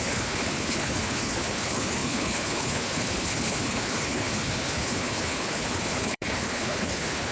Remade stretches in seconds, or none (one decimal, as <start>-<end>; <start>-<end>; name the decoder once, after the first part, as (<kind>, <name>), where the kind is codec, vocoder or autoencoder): 0.0-7.3 (codec, HILCodec)